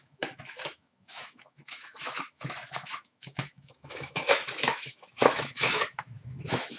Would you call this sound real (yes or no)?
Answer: no